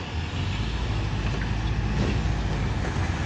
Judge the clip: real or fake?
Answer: real